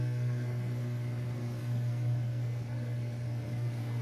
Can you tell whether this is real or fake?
fake